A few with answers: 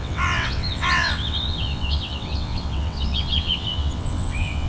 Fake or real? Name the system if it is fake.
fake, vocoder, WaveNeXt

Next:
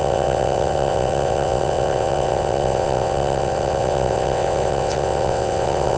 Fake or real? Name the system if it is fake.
fake, vocoder, WaveNeXt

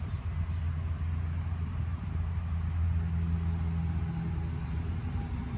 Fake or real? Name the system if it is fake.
real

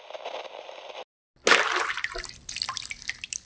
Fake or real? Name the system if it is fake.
real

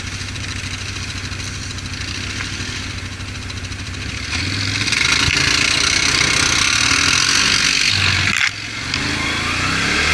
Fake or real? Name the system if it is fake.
real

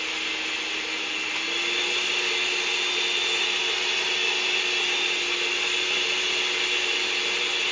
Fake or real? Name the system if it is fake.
real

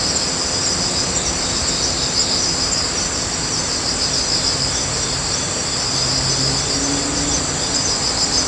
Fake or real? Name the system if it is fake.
real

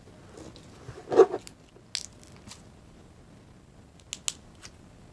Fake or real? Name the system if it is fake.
real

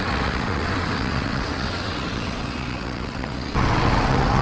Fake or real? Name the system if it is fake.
fake, vocoder, WaveNeXt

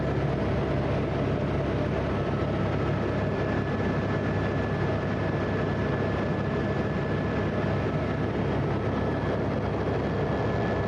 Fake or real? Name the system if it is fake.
real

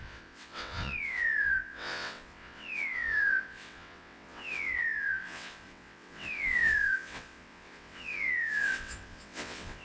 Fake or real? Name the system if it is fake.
fake, vocoder, WaveNeXt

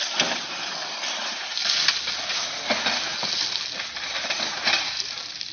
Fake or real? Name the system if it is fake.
real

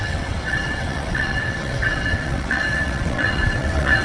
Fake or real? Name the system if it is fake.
fake, vocoder, WaveNeXt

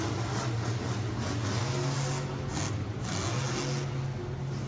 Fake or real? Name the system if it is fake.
real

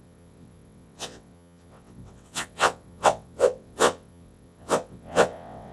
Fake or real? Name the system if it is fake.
fake, vocoder, WaveNeXt